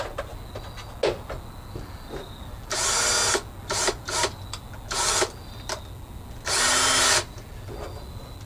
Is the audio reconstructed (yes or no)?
no